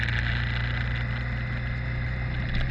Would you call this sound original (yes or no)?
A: yes